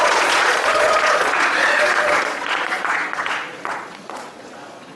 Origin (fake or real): fake